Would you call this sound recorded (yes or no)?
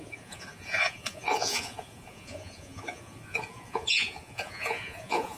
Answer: no